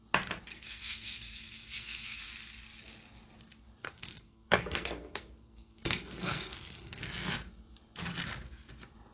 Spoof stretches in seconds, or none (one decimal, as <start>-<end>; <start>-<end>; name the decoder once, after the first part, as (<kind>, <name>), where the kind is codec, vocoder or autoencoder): 0.5-2.2 (codec, SNAC); 3.8-7.0